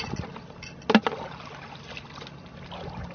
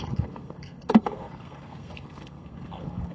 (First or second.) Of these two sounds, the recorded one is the first